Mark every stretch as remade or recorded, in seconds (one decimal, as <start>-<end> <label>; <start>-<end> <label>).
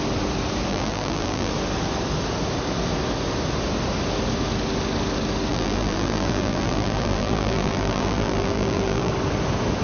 0.0-0.7 recorded; 0.7-1.5 remade; 1.5-5.5 recorded; 5.5-9.1 remade; 9.1-9.8 recorded